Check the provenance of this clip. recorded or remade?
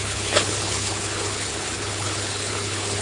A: remade